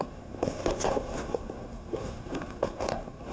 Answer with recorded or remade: remade